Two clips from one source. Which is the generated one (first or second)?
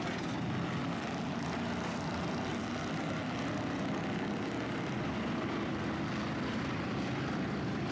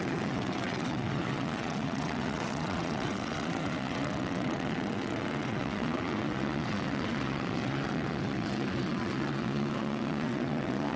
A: second